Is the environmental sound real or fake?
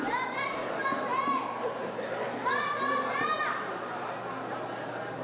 real